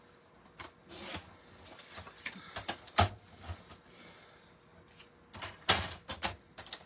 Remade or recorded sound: recorded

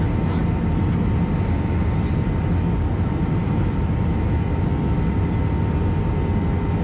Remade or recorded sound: recorded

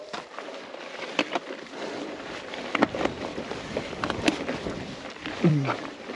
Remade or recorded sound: remade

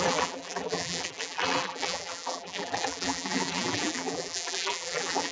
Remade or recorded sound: remade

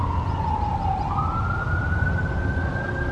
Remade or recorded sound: recorded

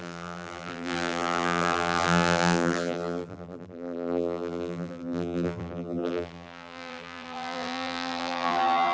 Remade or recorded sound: remade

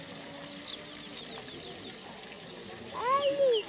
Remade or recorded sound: recorded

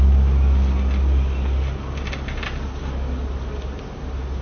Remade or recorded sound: recorded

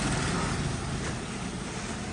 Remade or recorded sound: remade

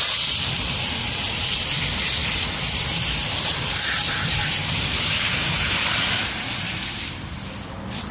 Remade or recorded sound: remade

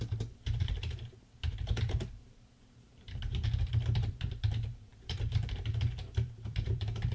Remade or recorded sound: remade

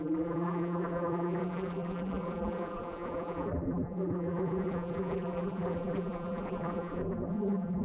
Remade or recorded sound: remade